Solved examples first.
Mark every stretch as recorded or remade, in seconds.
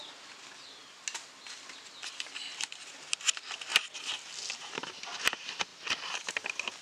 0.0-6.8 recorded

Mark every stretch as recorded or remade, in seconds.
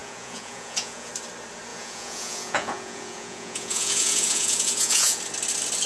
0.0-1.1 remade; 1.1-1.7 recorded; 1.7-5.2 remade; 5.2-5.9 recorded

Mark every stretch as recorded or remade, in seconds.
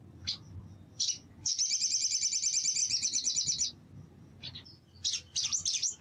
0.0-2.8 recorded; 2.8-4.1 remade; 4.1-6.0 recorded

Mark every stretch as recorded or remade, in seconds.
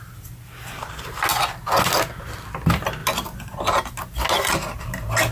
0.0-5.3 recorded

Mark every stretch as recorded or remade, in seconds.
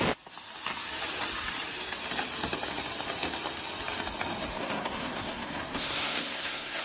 0.0-4.5 recorded; 4.5-6.8 remade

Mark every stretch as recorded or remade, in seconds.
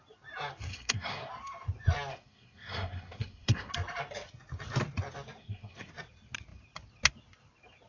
0.0-0.7 recorded; 0.7-1.3 remade; 1.3-2.1 recorded; 2.1-3.7 remade; 3.7-5.4 recorded; 5.4-5.9 remade; 5.9-7.9 recorded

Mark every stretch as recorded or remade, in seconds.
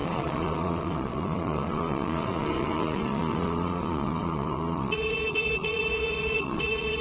0.0-7.0 remade